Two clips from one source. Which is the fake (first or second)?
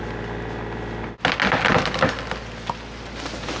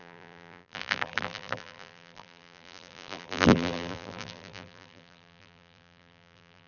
second